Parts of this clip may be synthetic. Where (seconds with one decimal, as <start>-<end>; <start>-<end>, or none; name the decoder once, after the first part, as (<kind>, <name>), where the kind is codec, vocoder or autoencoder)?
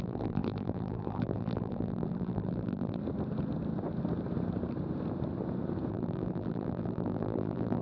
0.0-3.0 (vocoder, BigVGAN v2); 5.9-7.8